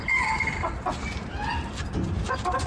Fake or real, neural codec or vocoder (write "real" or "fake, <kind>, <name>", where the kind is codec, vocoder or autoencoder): real